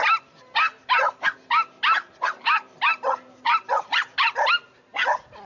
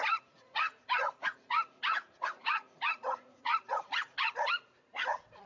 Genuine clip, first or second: first